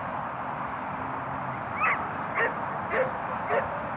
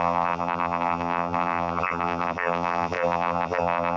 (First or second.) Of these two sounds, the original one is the first